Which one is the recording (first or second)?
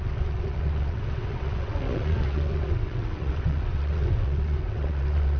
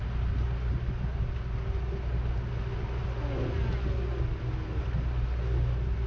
second